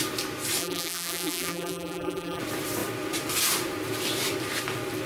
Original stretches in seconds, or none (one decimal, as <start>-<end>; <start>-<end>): 0.0-0.6; 2.4-5.1